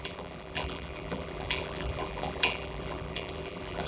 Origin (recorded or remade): remade